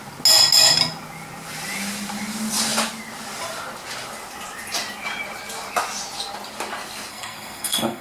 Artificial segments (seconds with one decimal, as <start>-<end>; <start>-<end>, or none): 7.1-8.0